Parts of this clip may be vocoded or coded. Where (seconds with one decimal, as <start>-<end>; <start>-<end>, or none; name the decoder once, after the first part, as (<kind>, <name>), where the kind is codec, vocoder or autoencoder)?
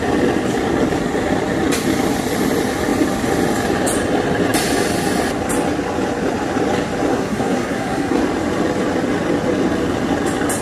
7.1-8.2 (codec, SNAC)